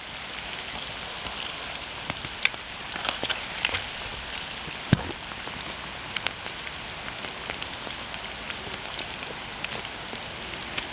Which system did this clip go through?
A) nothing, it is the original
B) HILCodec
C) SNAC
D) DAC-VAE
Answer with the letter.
A